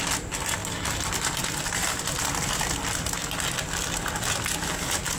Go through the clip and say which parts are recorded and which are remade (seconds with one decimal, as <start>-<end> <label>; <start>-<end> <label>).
0.0-0.6 recorded; 0.6-2.0 remade; 2.0-5.2 recorded